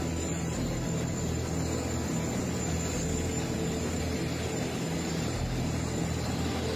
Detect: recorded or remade recorded